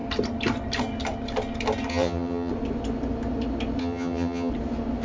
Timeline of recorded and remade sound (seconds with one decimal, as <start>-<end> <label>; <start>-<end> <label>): 0.0-1.9 recorded; 1.9-2.5 remade; 2.5-3.8 recorded; 3.8-4.5 remade; 4.5-5.0 recorded